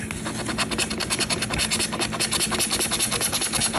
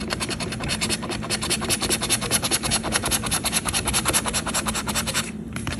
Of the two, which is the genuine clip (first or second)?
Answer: first